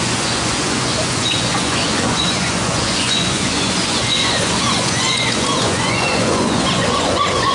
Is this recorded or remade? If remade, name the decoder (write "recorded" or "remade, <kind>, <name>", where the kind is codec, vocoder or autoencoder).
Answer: remade, vocoder, Vocos